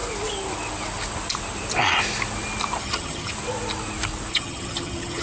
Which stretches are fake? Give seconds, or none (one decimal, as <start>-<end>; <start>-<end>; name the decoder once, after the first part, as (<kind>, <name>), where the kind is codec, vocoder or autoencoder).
2.8-3.3 (vocoder, HiFi-GAN); 4.3-5.2